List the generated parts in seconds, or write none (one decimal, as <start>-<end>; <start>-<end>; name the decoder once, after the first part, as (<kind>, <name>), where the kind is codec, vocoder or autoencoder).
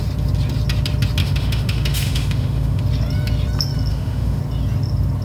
1.2-2.8 (autoencoder, DAC-VAE); 3.9-4.4